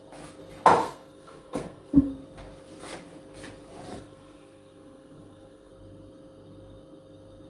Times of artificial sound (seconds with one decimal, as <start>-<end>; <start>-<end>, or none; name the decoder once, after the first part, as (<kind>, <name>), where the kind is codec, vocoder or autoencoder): 0.8-2.1 (codec, SNAC); 3.9-5.7